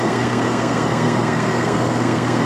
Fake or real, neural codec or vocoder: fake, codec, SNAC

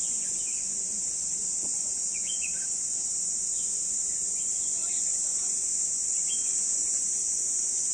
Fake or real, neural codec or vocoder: fake, vocoder, Vocos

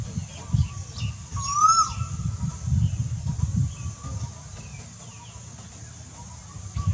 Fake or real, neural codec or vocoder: real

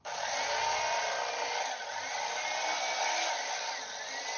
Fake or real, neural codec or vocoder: real